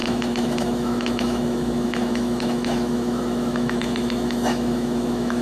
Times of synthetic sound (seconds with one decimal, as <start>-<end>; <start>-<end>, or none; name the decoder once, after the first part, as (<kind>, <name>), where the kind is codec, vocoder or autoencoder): 0.0-5.4 (autoencoder, DAC-VAE)